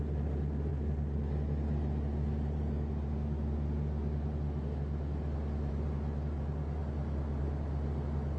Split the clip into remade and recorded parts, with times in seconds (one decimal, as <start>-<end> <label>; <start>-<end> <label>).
0.0-8.4 recorded